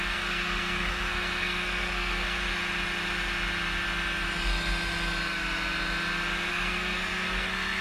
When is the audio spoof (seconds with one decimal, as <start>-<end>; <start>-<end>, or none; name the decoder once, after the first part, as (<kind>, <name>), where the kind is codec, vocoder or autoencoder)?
0.0-2.5 (codec, SNAC); 6.5-7.8